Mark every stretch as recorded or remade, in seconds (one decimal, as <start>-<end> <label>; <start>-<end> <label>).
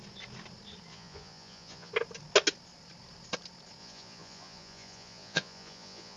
0.0-0.9 recorded; 0.9-1.9 remade; 1.9-3.8 recorded; 3.8-6.2 remade